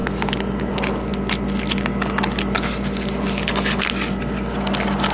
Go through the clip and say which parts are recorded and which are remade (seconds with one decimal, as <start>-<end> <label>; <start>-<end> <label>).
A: 0.0-5.1 recorded